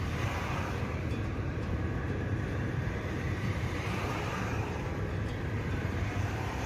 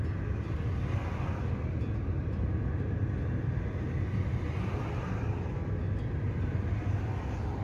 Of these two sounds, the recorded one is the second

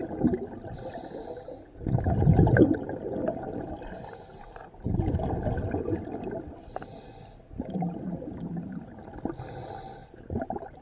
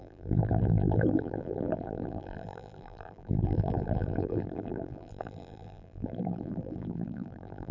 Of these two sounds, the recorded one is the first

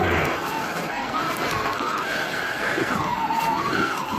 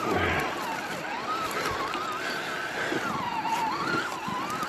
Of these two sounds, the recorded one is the second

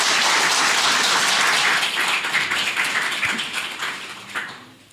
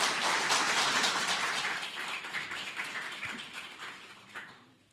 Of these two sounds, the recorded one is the first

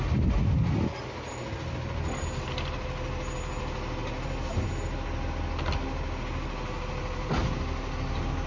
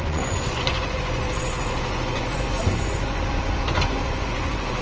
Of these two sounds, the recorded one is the first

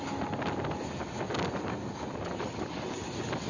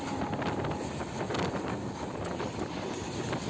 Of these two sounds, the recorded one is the first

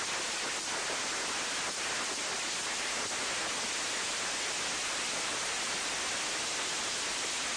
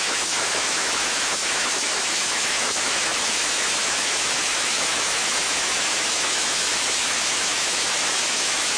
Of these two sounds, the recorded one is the first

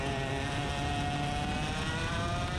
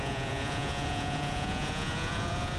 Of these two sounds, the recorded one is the first